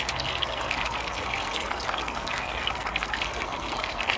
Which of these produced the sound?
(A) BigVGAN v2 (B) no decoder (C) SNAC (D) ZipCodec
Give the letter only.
C